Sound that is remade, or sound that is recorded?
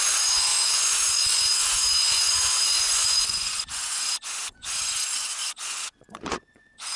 remade